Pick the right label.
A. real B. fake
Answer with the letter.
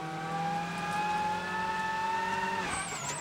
A